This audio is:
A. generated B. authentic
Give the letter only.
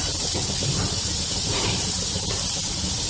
B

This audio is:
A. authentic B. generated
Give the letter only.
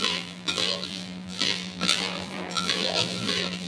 B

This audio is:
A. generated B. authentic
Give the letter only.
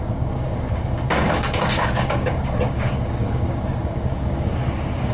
A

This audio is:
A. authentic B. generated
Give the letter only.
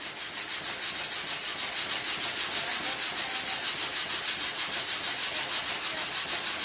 A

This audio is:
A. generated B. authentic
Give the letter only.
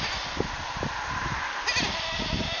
B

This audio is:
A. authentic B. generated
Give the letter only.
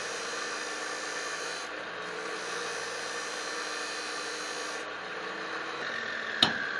A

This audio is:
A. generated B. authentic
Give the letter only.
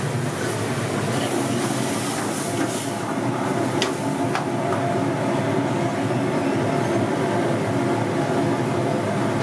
B